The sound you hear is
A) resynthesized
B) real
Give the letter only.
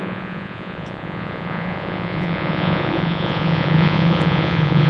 A